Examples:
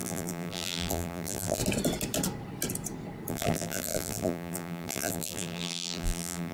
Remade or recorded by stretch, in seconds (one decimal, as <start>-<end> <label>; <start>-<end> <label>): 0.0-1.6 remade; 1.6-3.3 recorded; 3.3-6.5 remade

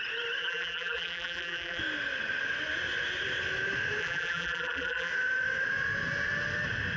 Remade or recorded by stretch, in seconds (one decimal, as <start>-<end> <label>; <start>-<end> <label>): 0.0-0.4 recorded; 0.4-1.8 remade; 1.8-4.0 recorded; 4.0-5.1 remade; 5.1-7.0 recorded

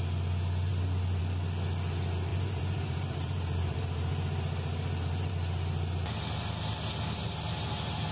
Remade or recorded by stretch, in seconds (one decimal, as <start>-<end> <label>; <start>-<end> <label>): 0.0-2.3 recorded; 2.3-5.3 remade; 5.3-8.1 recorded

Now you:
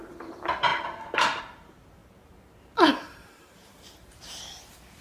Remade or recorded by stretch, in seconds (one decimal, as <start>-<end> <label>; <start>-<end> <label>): 0.0-0.7 remade; 0.7-1.4 recorded; 1.4-5.0 remade